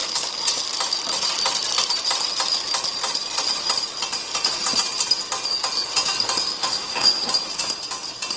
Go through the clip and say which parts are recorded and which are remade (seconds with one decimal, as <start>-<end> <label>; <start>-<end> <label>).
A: 0.0-6.6 recorded; 6.6-7.3 remade; 7.3-8.4 recorded